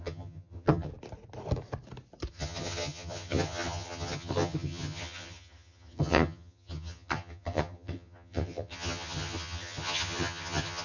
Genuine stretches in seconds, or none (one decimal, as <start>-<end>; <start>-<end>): 0.9-2.3